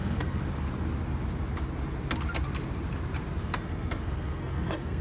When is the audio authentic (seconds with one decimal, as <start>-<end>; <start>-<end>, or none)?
0.4-3.4